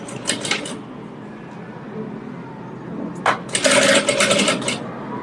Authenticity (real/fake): real